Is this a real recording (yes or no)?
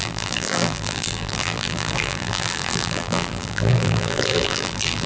no